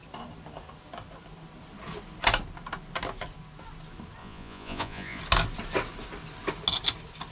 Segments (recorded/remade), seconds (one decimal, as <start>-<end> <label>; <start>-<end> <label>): 0.0-4.2 recorded; 4.2-5.2 remade; 5.2-7.3 recorded